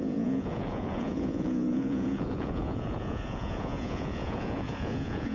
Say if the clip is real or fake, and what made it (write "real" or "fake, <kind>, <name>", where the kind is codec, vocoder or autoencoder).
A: fake, vocoder, Vocos